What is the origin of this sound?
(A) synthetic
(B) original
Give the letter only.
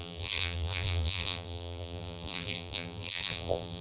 A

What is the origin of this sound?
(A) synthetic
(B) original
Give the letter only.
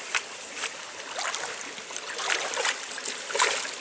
B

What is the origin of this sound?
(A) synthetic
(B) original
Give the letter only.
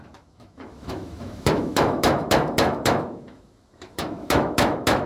A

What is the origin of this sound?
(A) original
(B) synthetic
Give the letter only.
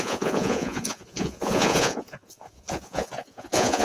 B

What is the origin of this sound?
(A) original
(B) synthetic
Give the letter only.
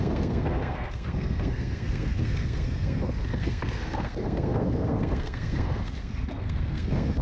B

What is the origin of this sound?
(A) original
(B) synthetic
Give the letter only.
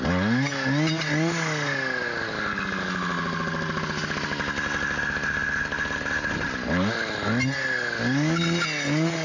A